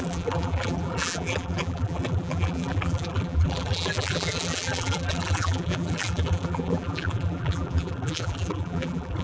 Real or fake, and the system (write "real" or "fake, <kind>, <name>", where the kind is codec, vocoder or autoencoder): fake, vocoder, BigVGAN v2